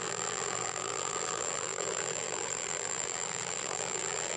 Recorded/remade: remade